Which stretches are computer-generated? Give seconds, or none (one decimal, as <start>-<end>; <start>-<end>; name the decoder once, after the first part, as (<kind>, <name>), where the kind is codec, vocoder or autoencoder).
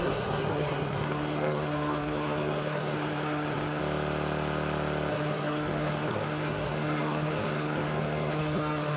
0.0-3.8 (codec, SNAC); 5.1-9.0